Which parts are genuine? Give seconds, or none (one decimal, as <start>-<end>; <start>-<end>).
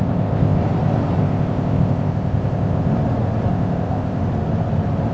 0.6-1.2; 2.9-3.5; 4.2-5.1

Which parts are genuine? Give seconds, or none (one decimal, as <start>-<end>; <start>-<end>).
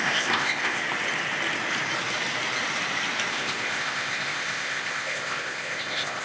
0.8-3.3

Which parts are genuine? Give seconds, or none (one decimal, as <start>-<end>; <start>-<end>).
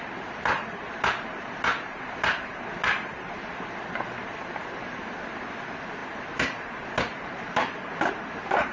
0.0-8.7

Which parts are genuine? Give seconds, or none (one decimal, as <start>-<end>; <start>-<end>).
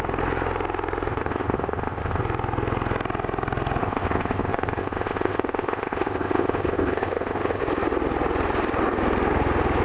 0.0-1.1; 2.2-3.8; 7.6-9.8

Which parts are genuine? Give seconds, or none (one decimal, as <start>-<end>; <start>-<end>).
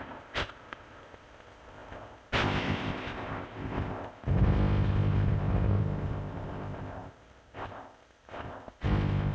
none